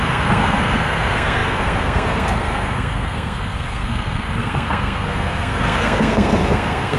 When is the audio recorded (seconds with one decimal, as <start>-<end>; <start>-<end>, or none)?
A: none